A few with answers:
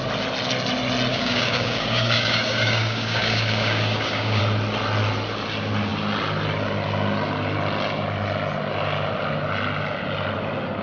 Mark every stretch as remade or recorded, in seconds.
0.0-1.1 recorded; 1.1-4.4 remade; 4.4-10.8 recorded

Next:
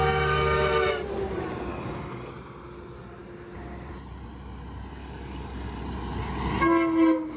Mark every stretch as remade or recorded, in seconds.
0.0-1.7 recorded; 1.7-2.3 remade; 2.3-5.0 recorded; 5.0-5.8 remade; 5.8-7.4 recorded